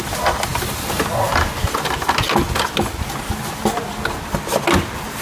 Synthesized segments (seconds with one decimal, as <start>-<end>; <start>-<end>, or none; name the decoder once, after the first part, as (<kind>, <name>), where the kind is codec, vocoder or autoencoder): none